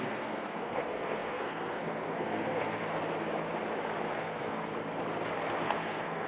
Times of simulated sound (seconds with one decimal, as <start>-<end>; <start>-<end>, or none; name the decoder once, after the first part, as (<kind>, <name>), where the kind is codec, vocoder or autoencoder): 0.0-2.8 (codec, SNAC); 4.1-4.7; 5.6-6.3